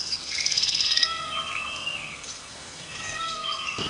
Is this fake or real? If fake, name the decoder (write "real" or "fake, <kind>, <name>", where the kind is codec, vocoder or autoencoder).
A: fake, codec, SNAC